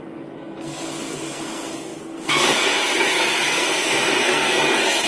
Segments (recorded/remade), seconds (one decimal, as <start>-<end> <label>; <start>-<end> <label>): 0.0-5.1 remade